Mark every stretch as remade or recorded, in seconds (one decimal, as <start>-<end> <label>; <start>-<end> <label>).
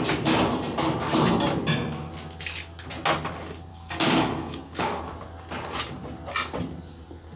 0.0-3.7 recorded; 3.7-5.0 remade; 5.0-7.4 recorded